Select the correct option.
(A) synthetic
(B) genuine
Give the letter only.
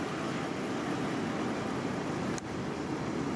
B